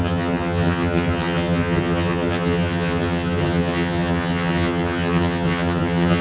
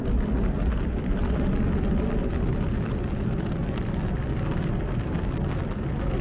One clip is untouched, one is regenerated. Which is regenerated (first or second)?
first